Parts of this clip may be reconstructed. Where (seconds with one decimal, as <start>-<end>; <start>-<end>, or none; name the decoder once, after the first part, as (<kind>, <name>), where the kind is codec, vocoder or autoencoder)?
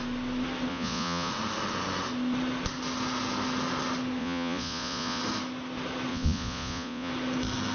0.7-1.3 (vocoder, Vocos); 4.2-5.2; 6.1-7.1